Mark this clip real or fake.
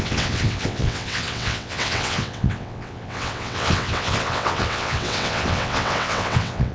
fake